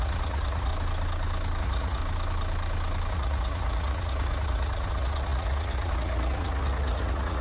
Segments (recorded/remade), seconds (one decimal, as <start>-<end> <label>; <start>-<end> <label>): 0.0-0.7 remade; 0.7-1.6 recorded; 1.6-2.0 remade; 2.0-3.1 recorded; 3.1-7.4 remade